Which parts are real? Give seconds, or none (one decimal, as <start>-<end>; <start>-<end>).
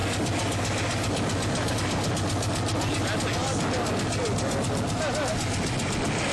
0.0-6.3